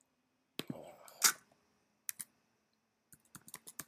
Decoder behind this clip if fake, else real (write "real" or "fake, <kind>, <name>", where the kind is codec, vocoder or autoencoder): real